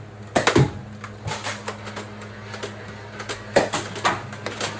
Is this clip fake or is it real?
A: real